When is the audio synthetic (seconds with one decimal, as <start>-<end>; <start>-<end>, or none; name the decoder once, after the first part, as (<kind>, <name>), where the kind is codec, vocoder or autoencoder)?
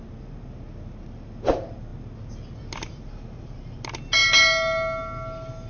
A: none